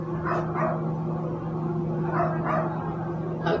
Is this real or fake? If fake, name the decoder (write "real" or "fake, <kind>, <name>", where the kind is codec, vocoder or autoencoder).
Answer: real